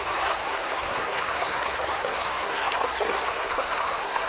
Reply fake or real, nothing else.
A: fake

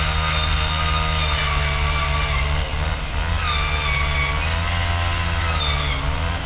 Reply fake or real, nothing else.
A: real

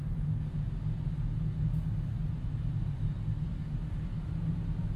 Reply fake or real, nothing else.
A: real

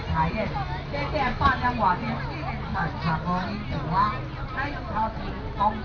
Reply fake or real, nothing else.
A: real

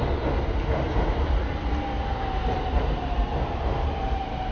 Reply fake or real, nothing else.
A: real